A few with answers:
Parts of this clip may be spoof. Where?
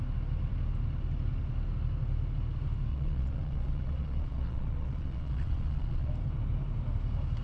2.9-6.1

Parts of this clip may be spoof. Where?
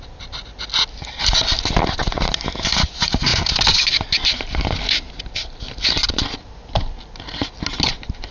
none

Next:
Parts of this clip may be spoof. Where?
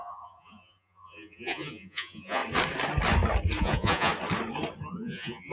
0.0-2.4; 3.6-4.1; 4.9-5.5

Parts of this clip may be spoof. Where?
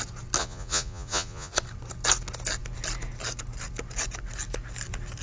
0.4-1.5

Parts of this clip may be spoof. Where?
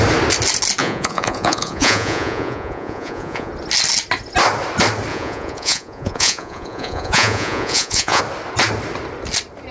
0.8-3.5; 5.1-8.2